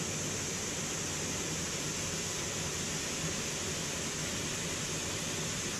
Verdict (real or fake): real